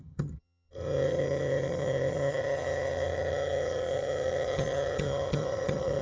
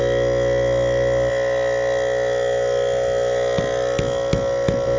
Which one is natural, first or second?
second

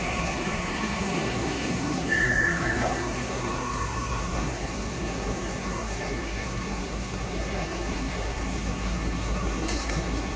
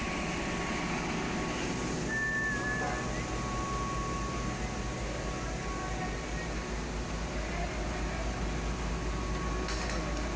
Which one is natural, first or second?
second